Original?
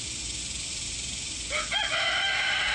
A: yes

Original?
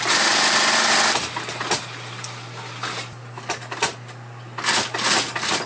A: yes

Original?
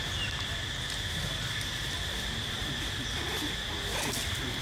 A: yes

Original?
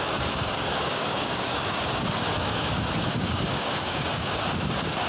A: no